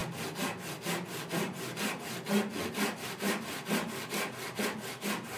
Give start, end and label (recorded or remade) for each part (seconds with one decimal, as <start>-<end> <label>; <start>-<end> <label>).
0.0-3.0 recorded; 3.0-5.4 remade